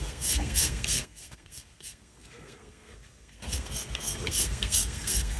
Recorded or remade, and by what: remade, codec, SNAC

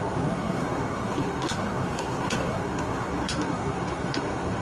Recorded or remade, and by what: remade, codec, SNAC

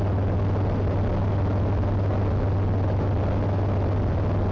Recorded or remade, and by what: recorded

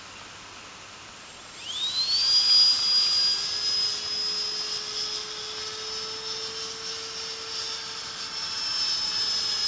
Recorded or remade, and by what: recorded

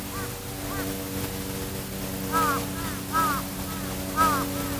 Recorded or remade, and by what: recorded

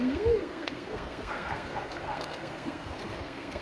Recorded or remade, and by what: remade, codec, SNAC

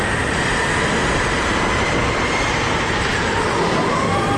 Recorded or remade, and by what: recorded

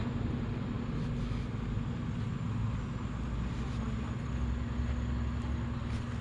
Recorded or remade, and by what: recorded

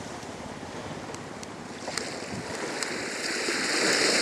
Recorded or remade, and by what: recorded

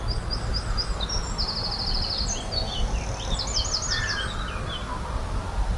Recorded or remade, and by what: recorded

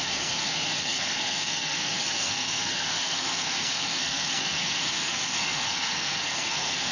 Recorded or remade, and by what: remade, codec, SNAC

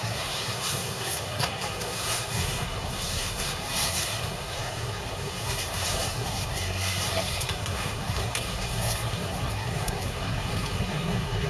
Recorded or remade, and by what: remade, codec, SNAC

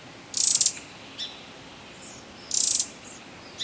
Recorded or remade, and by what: recorded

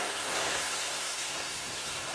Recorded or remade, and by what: remade, codec, SNAC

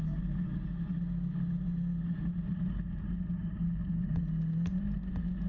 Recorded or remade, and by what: recorded